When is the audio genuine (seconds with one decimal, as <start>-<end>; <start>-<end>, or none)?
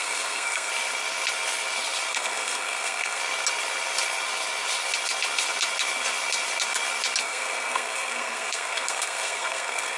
0.7-2.1; 3.2-7.2